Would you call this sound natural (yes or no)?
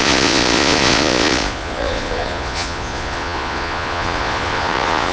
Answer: no